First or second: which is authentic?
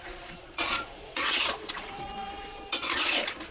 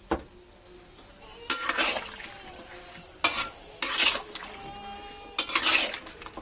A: second